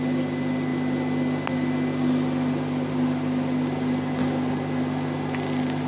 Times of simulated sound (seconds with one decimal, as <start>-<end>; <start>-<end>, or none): none